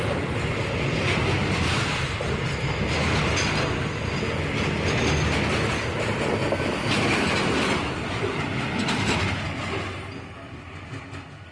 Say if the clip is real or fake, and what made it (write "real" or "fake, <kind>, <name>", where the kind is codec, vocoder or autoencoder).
real